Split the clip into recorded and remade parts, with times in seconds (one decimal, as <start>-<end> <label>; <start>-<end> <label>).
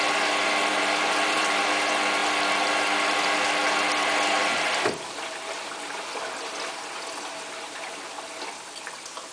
0.0-0.7 recorded; 0.7-1.6 remade; 1.6-9.3 recorded